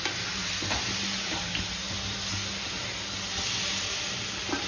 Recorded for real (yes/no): yes